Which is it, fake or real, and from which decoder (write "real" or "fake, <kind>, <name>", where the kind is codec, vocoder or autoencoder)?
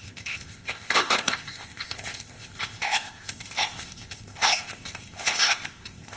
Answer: fake, codec, ZipCodec